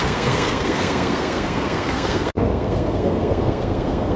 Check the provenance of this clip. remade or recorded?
remade